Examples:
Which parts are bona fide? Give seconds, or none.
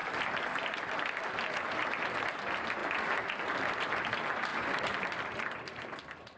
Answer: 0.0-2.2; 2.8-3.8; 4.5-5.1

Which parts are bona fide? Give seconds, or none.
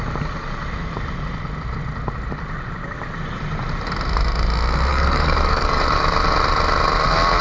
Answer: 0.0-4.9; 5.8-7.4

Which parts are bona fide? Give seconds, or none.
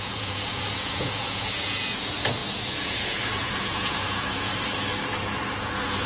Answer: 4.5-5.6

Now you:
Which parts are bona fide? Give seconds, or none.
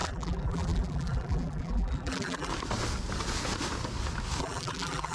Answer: 2.5-4.4